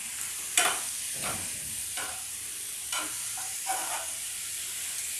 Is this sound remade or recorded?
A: remade